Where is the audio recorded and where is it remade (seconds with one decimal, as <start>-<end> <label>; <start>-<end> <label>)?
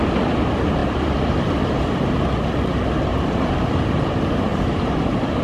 0.0-3.1 recorded; 3.1-3.7 remade; 3.7-4.5 recorded; 4.5-5.4 remade